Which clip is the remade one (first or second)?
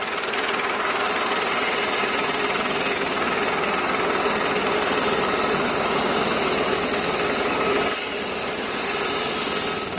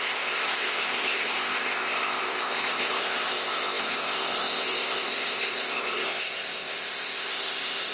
second